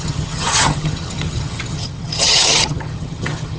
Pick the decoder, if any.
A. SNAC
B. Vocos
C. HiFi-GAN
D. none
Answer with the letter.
C